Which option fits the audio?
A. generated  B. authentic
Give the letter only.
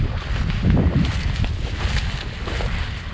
B